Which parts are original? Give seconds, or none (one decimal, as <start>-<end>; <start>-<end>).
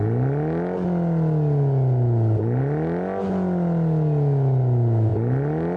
0.0-5.8